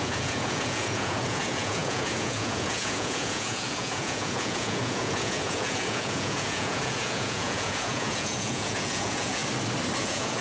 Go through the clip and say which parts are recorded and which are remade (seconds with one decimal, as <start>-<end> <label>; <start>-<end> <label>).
0.0-9.4 remade; 9.4-10.0 recorded; 10.0-10.4 remade